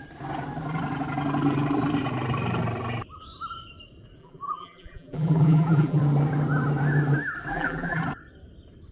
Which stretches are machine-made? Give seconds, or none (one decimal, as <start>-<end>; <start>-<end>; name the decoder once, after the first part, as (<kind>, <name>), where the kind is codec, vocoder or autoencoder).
4.2-6.0 (vocoder, BigVGAN v2); 7.5-8.0

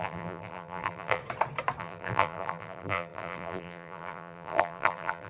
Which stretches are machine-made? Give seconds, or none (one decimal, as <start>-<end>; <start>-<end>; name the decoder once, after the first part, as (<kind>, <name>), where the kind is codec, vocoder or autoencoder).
0.0-1.2 (vocoder, BigVGAN v2); 1.8-5.3